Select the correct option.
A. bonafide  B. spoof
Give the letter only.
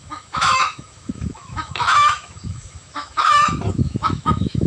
B